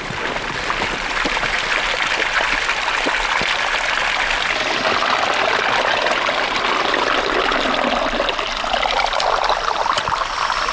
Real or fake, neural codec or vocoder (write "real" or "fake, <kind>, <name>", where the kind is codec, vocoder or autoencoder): real